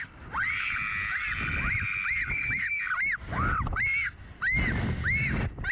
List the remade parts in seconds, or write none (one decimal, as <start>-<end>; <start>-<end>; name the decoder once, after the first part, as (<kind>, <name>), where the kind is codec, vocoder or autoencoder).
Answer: none